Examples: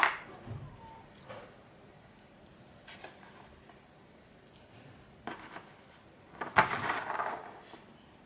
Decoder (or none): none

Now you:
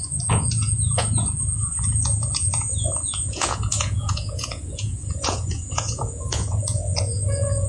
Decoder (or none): vocoder, Vocos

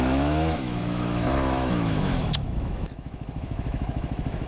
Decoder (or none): autoencoder, DAC-VAE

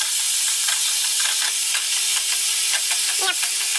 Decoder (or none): none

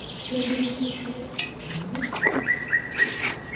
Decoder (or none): vocoder, Vocos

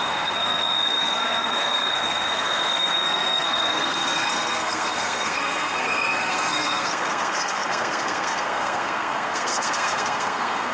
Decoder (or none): codec, SNAC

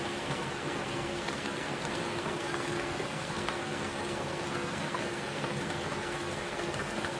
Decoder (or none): codec, SNAC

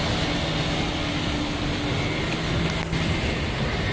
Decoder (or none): none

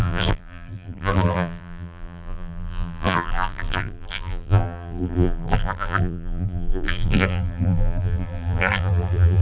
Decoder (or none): vocoder, BigVGAN v2